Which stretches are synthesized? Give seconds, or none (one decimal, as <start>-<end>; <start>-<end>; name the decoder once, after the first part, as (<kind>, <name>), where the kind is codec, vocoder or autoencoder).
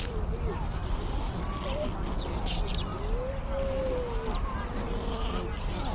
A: none